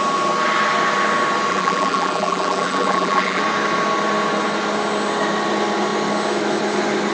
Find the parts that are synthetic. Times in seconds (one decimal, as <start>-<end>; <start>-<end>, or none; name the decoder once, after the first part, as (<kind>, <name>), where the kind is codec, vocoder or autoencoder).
1.5-3.4 (vocoder, BigVGAN v2)